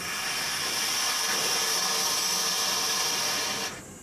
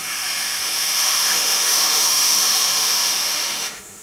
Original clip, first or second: first